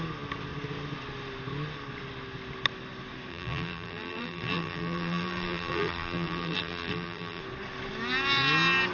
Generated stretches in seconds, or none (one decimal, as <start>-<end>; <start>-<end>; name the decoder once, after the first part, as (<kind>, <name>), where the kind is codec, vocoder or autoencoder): 3.3-7.4 (vocoder, BigVGAN v2)